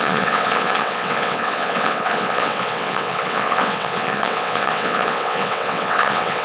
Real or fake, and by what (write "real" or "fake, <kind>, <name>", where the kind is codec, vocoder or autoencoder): fake, vocoder, WaveNeXt